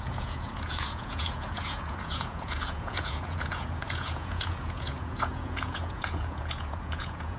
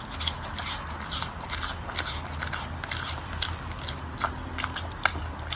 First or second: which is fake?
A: first